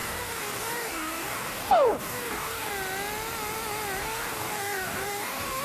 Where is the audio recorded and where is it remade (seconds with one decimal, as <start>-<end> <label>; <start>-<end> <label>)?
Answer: 0.0-2.7 remade; 2.7-4.0 recorded; 4.0-5.6 remade